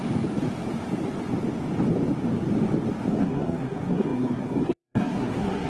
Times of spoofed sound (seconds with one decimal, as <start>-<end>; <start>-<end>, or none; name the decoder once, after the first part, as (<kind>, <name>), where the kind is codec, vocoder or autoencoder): 3.1-5.7 (codec, SNAC)